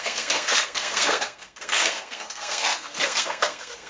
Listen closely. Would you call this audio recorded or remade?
remade